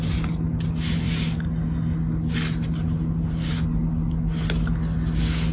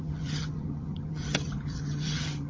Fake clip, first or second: second